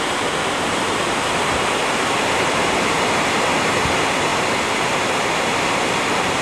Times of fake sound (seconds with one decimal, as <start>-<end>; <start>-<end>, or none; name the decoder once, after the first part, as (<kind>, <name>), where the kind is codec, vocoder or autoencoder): 0.0-6.4 (vocoder, BigVGAN v2)